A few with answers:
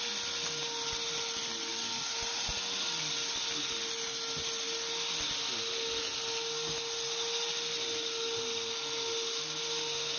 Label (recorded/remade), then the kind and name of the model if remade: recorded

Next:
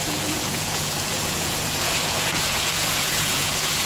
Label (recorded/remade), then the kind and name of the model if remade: remade, vocoder, Vocos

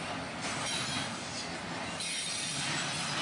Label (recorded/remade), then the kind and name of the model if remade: recorded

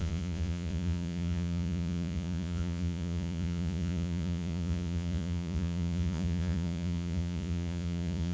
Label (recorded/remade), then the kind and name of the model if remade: remade, vocoder, Vocos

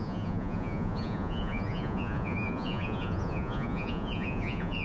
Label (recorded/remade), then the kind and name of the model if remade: remade, vocoder, Vocos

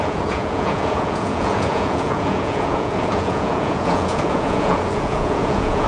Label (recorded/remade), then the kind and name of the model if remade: remade, vocoder, Vocos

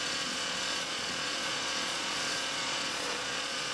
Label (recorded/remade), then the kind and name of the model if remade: remade, vocoder, Vocos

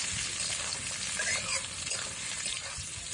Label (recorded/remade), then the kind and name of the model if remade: recorded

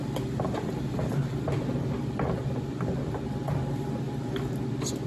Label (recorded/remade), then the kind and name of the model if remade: recorded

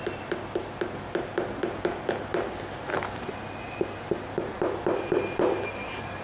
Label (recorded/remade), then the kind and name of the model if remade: recorded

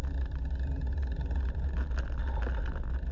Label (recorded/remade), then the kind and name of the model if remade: recorded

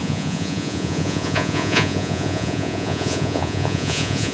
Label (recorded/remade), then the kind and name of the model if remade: remade, vocoder, Vocos